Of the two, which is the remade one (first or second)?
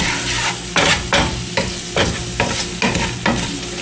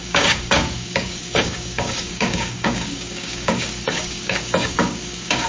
second